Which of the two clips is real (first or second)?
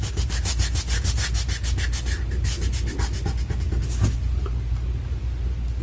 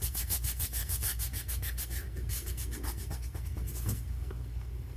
first